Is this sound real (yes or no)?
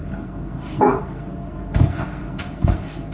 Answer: no